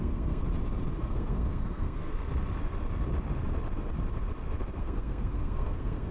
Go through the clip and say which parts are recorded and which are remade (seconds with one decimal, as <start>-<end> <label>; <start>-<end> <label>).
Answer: 0.0-0.4 remade; 0.4-1.0 recorded; 1.0-2.1 remade; 2.1-4.8 recorded; 4.8-6.1 remade